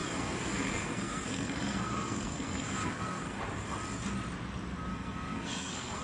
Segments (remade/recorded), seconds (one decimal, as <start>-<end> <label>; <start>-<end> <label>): 0.0-3.4 remade; 3.4-4.9 recorded; 4.9-6.0 remade